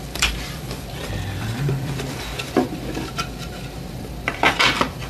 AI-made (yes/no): yes